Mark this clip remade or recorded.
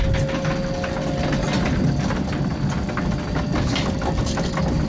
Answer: recorded